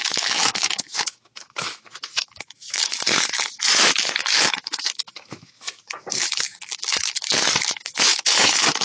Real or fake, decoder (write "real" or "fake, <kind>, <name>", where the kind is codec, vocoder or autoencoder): fake, autoencoder, DAC-VAE